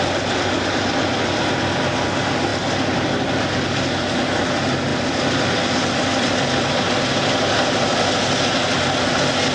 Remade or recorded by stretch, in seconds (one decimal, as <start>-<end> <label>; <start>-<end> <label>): 0.0-9.5 recorded